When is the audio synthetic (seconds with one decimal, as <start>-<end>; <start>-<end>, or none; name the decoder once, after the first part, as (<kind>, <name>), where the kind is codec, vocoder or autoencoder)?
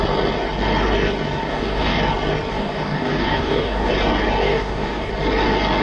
1.5-2.0 (codec, DAC); 2.5-3.9; 4.4-5.1